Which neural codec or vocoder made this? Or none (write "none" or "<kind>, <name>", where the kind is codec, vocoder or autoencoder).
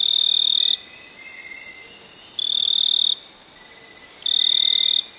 none